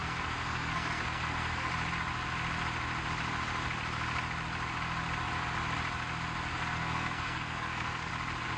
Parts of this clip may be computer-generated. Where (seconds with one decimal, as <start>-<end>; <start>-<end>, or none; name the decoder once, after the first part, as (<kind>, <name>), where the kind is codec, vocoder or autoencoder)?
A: 0.0-1.7 (codec, SNAC); 6.5-8.1